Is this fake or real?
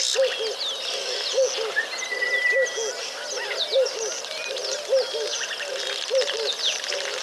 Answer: real